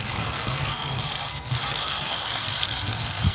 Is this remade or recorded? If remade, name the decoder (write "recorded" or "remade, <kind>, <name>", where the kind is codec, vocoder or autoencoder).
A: remade, codec, SNAC